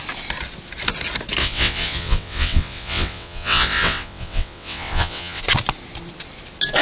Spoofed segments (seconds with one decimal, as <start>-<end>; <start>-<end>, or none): 1.4-5.4